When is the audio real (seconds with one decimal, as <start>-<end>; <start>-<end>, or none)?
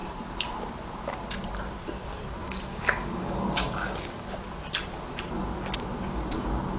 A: 0.0-2.4; 4.2-6.8